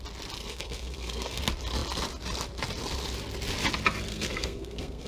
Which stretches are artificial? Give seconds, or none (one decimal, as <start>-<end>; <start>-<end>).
0.4-1.4; 4.1-5.1